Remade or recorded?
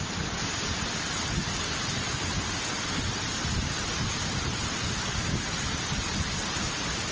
recorded